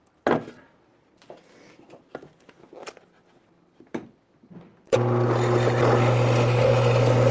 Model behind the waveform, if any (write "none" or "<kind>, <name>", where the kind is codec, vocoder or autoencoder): none